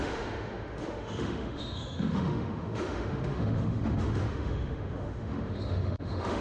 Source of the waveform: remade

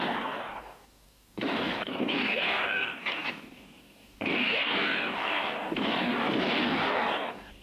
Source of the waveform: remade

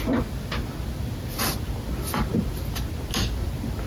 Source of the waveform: recorded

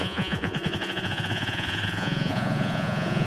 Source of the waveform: remade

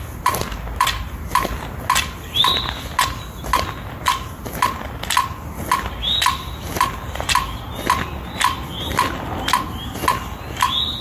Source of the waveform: recorded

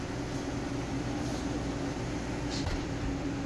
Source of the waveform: recorded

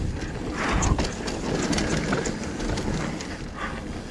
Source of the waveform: recorded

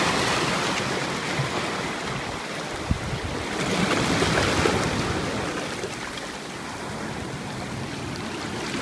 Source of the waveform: recorded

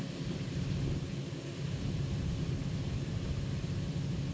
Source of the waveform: recorded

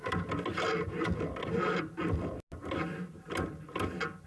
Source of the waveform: recorded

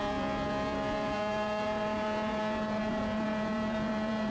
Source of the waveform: remade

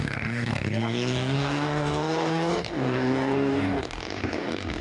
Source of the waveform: remade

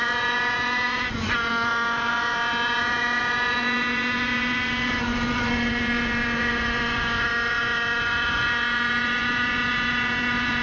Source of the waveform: remade